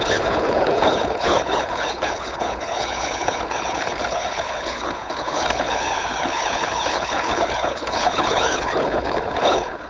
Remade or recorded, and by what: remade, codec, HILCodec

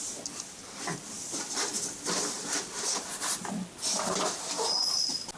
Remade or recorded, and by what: recorded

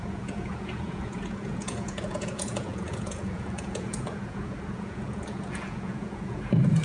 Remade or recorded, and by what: remade, vocoder, Vocos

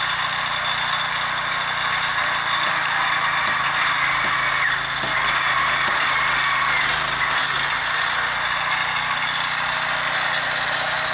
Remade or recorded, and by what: recorded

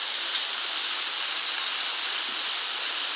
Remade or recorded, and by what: recorded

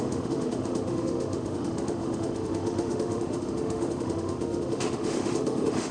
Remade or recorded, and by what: remade, autoencoder, DAC-VAE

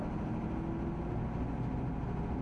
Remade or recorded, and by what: recorded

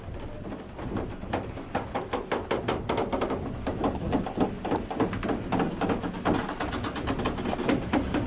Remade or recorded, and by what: recorded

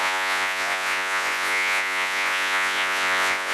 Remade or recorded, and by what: remade, vocoder, Vocos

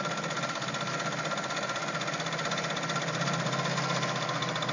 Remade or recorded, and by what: recorded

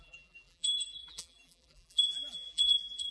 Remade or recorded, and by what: remade, vocoder, BigVGAN v2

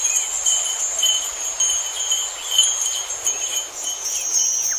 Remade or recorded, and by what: recorded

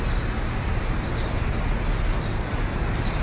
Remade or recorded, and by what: recorded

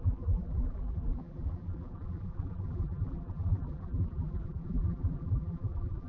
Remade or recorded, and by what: remade, vocoder, BigVGAN v2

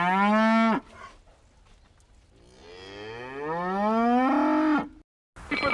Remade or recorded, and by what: recorded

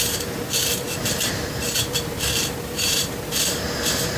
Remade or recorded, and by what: remade, vocoder, BigVGAN v2